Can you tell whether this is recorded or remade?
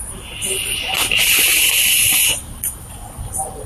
recorded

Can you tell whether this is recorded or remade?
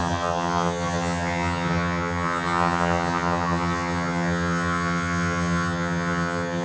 remade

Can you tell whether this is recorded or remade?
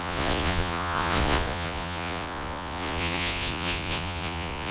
remade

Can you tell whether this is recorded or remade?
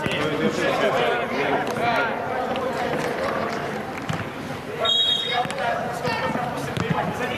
recorded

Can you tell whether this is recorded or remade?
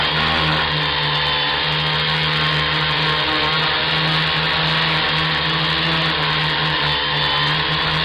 recorded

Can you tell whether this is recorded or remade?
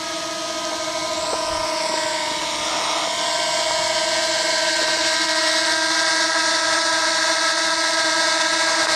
recorded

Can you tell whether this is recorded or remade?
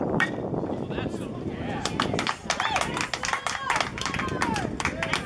remade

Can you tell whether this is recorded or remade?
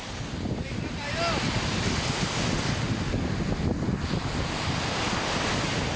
recorded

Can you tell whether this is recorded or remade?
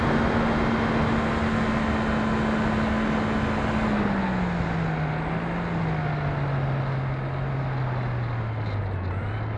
recorded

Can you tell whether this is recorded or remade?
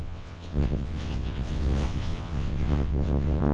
remade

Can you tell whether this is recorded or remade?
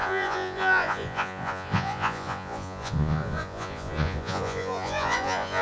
remade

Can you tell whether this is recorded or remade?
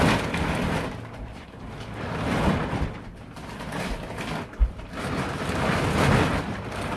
remade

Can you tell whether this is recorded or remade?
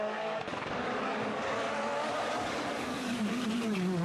remade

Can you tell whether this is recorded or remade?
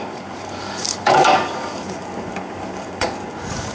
remade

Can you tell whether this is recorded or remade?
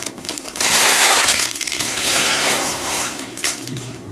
remade